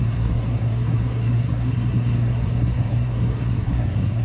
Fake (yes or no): yes